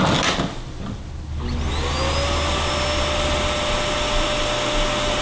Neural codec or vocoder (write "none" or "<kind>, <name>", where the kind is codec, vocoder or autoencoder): none